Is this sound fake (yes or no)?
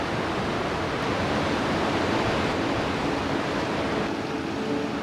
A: no